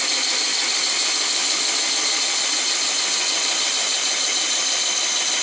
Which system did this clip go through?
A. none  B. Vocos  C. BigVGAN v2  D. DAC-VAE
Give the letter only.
A